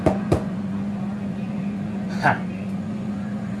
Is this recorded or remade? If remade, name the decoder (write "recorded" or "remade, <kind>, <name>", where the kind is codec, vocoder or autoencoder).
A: remade, vocoder, Vocos